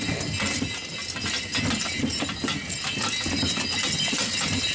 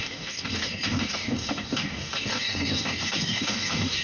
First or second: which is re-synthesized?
second